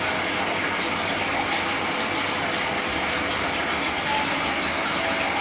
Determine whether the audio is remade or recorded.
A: recorded